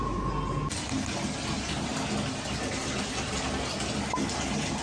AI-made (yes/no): no